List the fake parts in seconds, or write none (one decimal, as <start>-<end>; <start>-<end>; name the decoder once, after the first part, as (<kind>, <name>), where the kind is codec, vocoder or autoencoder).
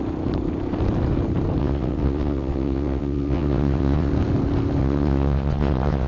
1.6-4.1 (vocoder, WaveNeXt); 4.8-6.1